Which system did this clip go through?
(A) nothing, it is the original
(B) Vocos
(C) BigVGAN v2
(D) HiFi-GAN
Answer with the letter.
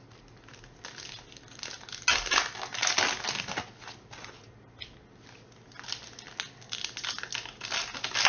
A